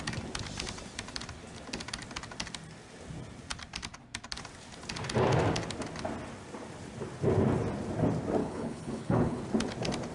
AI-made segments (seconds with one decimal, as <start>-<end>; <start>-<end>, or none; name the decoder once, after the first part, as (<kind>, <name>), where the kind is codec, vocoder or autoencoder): 8.4-9.4 (codec, HILCodec)